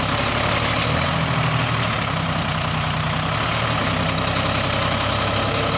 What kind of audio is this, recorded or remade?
recorded